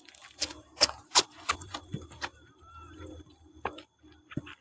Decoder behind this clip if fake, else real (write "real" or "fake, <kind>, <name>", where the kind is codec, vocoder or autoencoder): fake, vocoder, BigVGAN v2